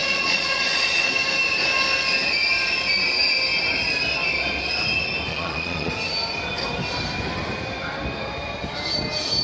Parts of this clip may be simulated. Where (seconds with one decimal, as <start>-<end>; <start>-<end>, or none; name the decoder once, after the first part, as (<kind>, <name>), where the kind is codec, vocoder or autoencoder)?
0.0-1.1 (vocoder, Vocos); 5.3-5.9